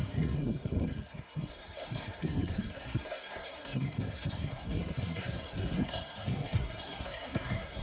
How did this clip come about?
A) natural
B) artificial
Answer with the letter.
B